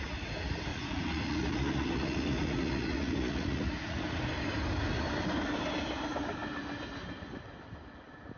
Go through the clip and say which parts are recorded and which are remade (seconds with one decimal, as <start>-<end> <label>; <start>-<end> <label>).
0.0-0.7 recorded; 0.7-4.2 remade; 4.2-8.4 recorded